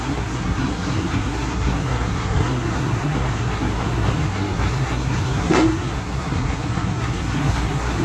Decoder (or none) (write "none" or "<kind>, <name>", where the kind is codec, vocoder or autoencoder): codec, SNAC